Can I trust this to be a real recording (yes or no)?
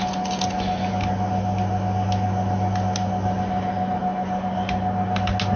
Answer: yes